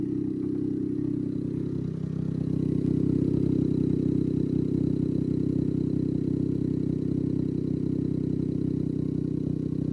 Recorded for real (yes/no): yes